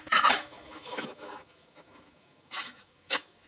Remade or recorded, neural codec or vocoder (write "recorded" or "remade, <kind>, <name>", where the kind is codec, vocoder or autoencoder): remade, autoencoder, DAC-VAE